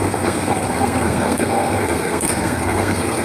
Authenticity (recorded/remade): remade